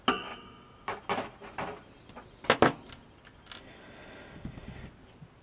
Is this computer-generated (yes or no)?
no